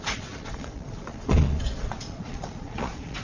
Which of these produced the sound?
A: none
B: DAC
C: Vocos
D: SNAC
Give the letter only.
C